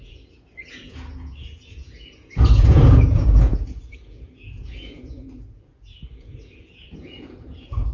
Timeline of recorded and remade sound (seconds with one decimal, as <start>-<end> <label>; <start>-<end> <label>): 0.0-7.9 remade